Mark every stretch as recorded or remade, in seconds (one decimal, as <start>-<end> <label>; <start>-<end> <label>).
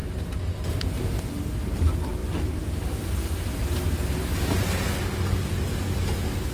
0.0-6.5 recorded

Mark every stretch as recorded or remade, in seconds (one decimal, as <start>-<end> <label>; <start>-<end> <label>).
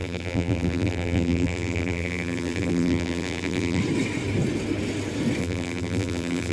0.0-3.8 remade; 3.8-5.4 recorded; 5.4-6.5 remade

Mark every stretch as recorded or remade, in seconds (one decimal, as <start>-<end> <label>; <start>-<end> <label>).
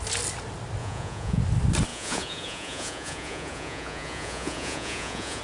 0.0-0.8 recorded; 0.8-1.4 remade; 1.4-1.9 recorded; 1.9-5.4 remade